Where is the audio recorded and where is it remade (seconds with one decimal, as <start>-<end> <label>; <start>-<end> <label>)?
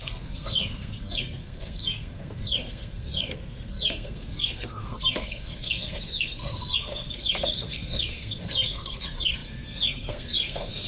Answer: 0.0-10.9 remade